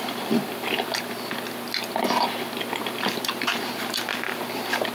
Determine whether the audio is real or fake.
real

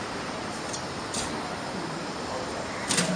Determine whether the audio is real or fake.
fake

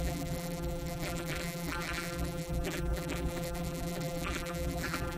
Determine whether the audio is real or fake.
fake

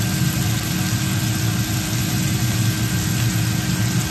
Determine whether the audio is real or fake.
real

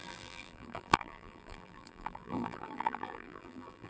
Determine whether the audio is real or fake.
fake